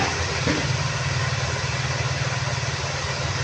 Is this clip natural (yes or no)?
yes